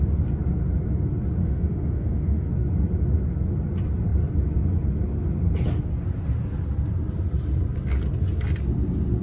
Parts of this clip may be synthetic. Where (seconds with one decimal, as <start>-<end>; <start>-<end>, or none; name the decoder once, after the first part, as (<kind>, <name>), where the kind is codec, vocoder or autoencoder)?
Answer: 1.4-2.5 (autoencoder, DAC-VAE)